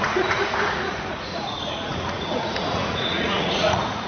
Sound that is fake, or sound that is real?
fake